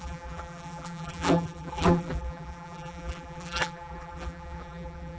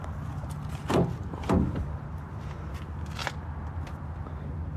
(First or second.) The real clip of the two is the second